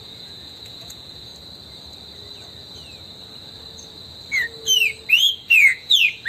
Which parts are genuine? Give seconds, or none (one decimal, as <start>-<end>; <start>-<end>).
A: 1.3-5.1